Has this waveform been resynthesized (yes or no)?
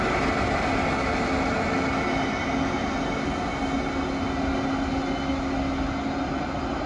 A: no